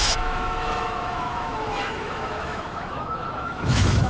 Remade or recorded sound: remade